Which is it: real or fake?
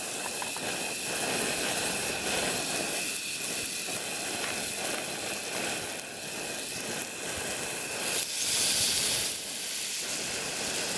real